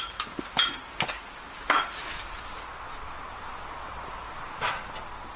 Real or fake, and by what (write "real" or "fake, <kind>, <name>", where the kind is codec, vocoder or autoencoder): real